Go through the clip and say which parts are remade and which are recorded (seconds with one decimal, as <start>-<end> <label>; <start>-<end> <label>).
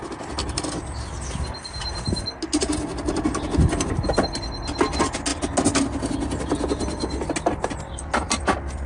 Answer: 0.0-8.9 recorded